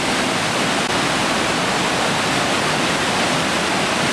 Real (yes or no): yes